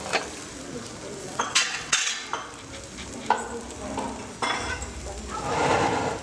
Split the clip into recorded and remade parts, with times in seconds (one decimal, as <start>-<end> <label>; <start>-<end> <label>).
0.0-1.2 recorded; 1.2-2.1 remade; 2.1-6.2 recorded